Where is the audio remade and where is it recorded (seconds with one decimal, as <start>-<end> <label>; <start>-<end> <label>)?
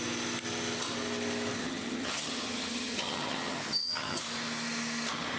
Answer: 0.0-1.6 recorded; 1.6-4.2 remade; 4.2-5.4 recorded